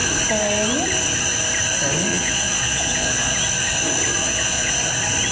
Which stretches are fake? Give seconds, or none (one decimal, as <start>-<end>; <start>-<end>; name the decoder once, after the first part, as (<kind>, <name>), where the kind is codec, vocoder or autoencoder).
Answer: 2.1-3.4 (vocoder, Vocos); 4.2-4.7